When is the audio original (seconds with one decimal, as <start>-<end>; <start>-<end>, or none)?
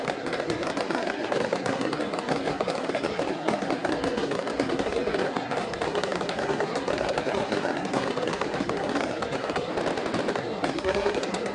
9.7-10.3